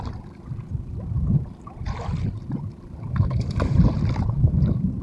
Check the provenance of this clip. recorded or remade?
remade